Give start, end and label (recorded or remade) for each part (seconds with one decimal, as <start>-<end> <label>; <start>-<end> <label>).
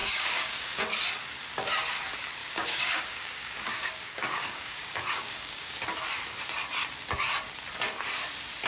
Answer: 0.0-0.8 remade; 0.8-2.4 recorded; 2.4-5.8 remade; 5.8-8.7 recorded